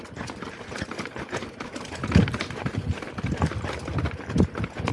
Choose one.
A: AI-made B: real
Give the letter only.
B